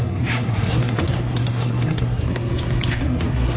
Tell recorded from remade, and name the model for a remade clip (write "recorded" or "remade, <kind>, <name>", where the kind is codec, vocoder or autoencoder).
remade, codec, SNAC